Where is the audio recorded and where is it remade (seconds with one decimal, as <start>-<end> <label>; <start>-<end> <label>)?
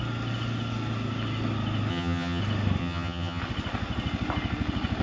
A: 0.0-1.9 recorded; 1.9-2.4 remade; 2.4-2.8 recorded; 2.8-3.4 remade; 3.4-5.0 recorded